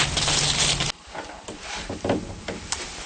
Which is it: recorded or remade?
recorded